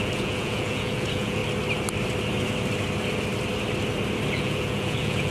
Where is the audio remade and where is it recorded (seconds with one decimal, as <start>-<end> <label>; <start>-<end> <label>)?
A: 0.0-1.4 remade; 1.4-4.3 recorded; 4.3-5.3 remade